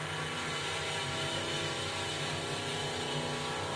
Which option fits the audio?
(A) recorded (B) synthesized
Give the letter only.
A